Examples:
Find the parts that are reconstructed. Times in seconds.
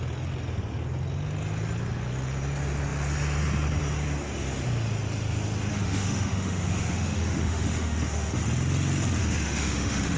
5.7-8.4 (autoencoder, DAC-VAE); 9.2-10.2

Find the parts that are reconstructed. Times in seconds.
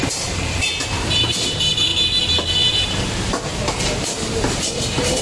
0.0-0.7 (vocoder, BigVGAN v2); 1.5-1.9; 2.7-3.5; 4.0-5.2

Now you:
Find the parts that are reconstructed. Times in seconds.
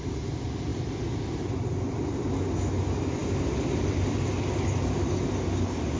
0.7-2.3 (vocoder, BigVGAN v2); 3.2-4.3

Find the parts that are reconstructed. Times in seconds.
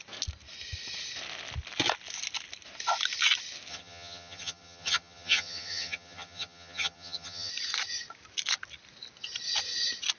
3.7-7.5 (vocoder, HiFi-GAN)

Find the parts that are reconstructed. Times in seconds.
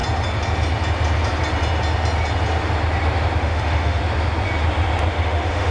3.4-4.0 (autoencoder, DAC-VAE); 5.1-5.7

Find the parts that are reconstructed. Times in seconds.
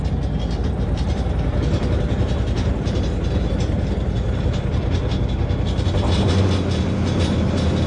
0.6-5.1 (vocoder, BigVGAN v2)